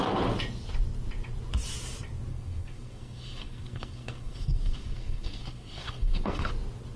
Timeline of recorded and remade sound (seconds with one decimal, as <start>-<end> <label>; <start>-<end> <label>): 0.0-2.3 recorded; 2.3-6.5 remade; 6.5-7.0 recorded